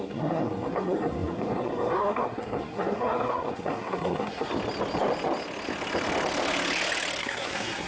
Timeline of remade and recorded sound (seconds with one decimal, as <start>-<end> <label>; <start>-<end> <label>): 0.0-4.5 remade; 4.5-7.2 recorded; 7.2-7.9 remade